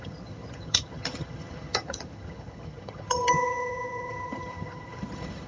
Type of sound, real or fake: fake